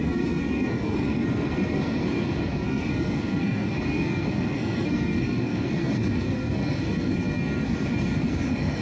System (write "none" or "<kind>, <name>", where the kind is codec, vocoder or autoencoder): codec, SNAC